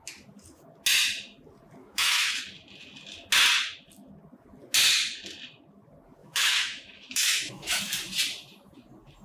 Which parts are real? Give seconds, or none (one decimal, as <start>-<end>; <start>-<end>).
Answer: 0.0-1.8; 2.4-6.2; 7.8-9.2